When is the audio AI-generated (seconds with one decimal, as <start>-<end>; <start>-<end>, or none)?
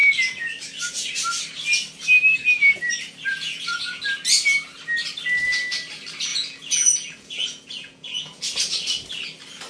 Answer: 3.3-4.0; 6.3-8.4